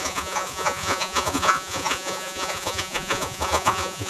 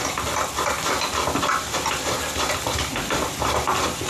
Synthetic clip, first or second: first